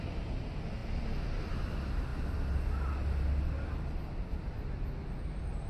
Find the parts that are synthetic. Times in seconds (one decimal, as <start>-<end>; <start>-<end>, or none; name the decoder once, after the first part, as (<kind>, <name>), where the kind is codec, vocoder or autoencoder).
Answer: none